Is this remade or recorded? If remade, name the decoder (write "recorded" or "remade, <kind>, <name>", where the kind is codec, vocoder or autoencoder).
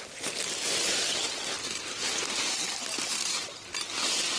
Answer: recorded